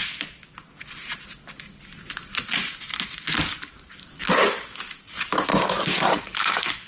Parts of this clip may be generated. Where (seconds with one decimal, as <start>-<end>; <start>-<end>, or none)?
4.1-5.5; 6.2-6.9